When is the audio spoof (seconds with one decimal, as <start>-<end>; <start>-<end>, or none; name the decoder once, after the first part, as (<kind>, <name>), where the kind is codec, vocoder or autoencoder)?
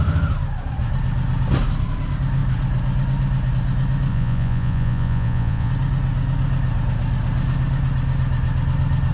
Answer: 4.1-5.7 (vocoder, Vocos)